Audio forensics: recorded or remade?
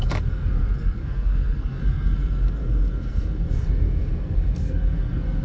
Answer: remade